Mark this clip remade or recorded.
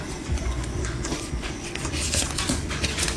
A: remade